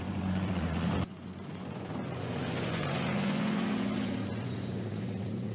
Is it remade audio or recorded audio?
remade